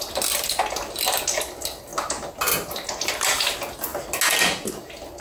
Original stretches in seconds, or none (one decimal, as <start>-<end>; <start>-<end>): 0.0-5.2